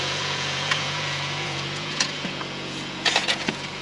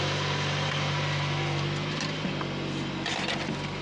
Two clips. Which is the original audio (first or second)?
second